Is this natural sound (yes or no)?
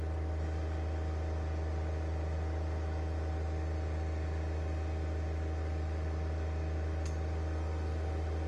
yes